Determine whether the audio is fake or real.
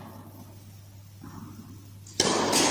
real